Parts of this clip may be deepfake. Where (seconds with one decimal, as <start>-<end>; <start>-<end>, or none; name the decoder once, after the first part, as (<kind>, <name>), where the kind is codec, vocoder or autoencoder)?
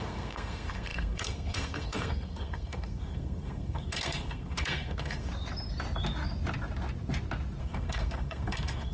0.0-5.3 (codec, SNAC); 7.6-8.9